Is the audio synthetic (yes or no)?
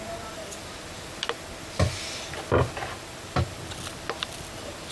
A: no